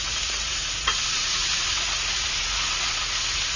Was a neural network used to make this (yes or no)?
yes